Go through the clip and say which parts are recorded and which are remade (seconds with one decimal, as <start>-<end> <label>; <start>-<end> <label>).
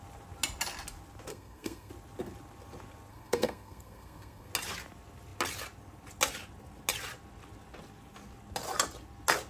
0.0-1.3 recorded; 1.3-1.9 remade; 1.9-3.1 recorded; 3.1-4.5 remade; 4.5-9.5 recorded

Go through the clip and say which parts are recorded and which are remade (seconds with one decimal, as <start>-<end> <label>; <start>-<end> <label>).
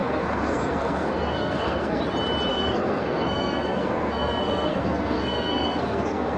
0.0-2.0 remade; 2.0-2.5 recorded; 2.5-6.4 remade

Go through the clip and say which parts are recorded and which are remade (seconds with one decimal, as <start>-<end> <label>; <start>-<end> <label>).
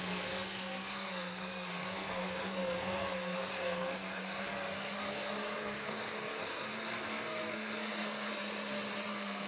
0.0-8.3 remade; 8.3-9.1 recorded; 9.1-9.5 remade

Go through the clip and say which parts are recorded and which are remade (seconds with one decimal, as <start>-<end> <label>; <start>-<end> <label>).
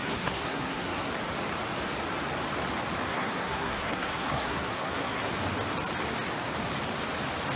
0.0-1.1 remade; 1.1-3.1 recorded; 3.1-5.3 remade; 5.3-7.6 recorded